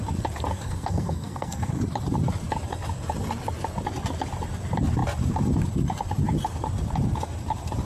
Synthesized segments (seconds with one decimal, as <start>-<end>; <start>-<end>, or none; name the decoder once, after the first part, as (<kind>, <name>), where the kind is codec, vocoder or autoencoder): 0.5-1.7 (codec, SNAC)